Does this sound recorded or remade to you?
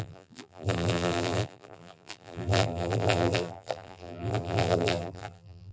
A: remade